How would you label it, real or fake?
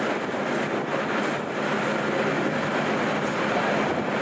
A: real